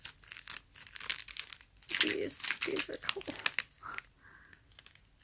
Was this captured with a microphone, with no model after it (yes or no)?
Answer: yes